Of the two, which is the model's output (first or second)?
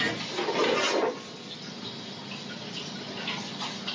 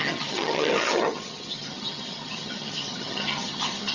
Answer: second